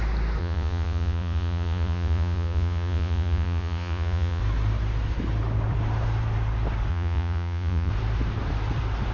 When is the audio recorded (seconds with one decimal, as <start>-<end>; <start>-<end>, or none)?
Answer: 0.0-0.4; 4.4-6.9; 7.9-9.1